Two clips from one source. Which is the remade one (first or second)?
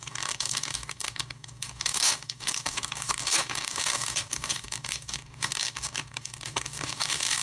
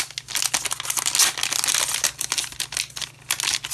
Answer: first